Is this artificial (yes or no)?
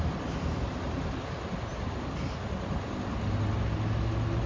no